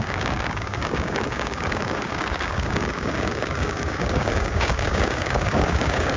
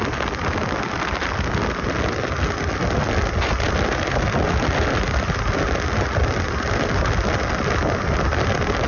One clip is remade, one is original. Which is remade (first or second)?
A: first